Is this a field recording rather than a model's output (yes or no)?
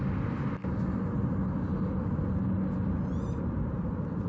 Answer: yes